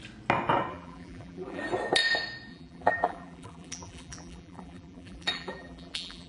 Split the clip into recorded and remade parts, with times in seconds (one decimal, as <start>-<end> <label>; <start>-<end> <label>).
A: 0.0-0.7 recorded; 0.7-1.6 remade; 1.6-2.5 recorded; 2.5-6.3 remade